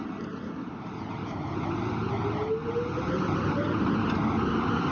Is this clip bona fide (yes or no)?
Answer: yes